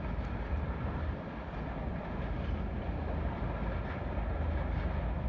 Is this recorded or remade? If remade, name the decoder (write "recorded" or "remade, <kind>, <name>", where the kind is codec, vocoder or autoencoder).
recorded